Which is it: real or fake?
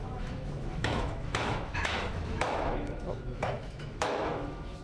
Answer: fake